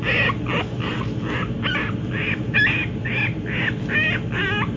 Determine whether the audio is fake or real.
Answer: real